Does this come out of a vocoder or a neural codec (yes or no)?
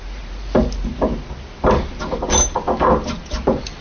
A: no